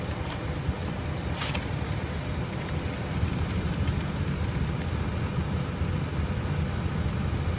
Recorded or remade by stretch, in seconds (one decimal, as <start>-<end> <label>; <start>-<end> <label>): 0.0-7.6 recorded